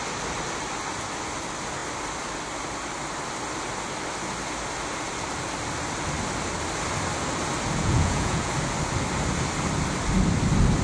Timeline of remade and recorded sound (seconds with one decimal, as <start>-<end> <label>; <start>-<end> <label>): 0.0-7.8 recorded; 7.8-8.5 remade; 8.5-10.8 recorded